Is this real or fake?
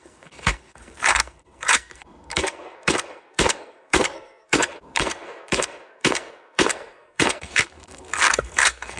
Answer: fake